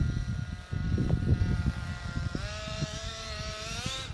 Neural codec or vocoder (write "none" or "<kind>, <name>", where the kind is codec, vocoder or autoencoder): none